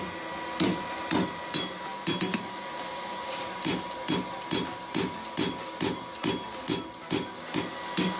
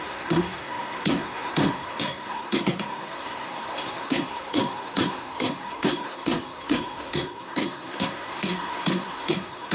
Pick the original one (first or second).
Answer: first